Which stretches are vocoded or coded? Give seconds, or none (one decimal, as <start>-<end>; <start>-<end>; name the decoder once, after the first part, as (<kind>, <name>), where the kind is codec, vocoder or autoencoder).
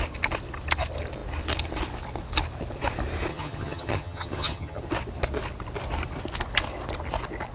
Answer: 3.3-4.8 (vocoder, HiFi-GAN)